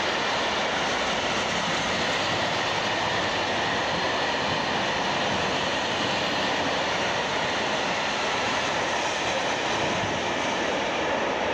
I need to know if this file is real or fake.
real